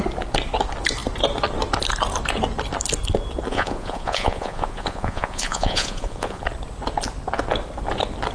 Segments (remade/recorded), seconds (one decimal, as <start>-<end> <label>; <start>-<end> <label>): 0.0-3.5 recorded; 3.5-6.4 remade; 6.4-8.3 recorded